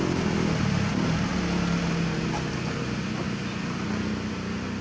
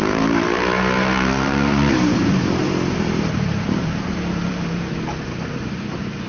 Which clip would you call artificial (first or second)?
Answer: second